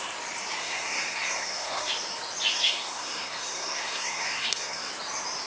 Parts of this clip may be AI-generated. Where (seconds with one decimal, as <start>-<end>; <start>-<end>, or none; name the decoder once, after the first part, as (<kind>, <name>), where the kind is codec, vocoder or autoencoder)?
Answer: 0.6-1.9 (codec, SNAC); 2.5-4.9